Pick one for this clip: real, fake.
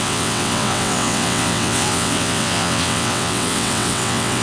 fake